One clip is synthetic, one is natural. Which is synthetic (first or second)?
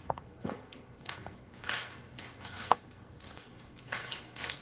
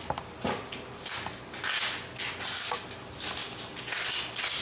first